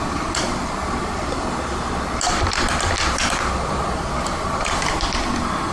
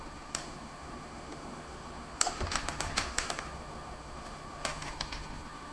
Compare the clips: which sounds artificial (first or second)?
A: second